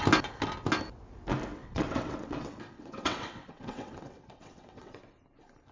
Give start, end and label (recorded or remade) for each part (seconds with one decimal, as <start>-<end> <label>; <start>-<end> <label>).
0.0-1.6 recorded; 1.6-5.0 remade; 5.0-5.7 recorded